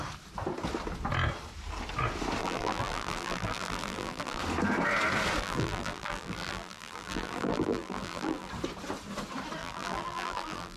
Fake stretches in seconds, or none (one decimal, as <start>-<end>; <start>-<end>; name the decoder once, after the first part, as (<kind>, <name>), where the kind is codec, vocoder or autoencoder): 2.4-4.4 (vocoder, BigVGAN v2); 5.4-8.5; 9.6-10.8